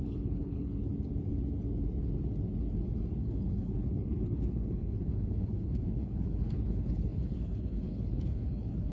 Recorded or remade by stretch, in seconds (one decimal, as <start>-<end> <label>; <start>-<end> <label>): 0.0-0.9 remade; 0.9-3.1 recorded; 3.1-8.9 remade